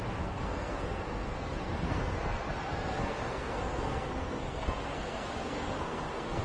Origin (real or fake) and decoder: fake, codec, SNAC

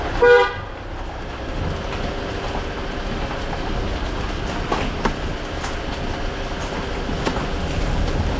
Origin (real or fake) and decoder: real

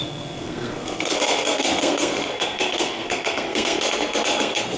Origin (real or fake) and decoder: fake, codec, SNAC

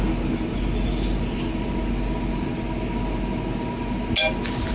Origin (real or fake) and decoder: real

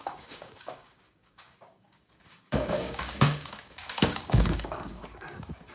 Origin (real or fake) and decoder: fake, codec, DAC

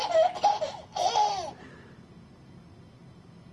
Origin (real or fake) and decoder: real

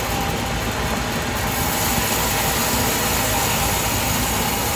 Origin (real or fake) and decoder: real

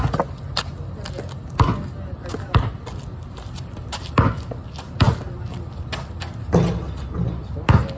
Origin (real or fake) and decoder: real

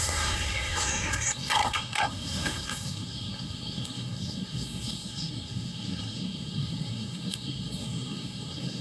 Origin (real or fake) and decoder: fake, codec, SNAC